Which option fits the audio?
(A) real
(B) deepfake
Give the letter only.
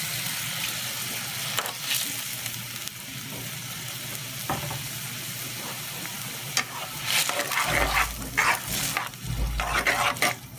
A